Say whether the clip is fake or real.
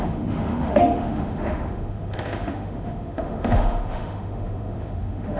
fake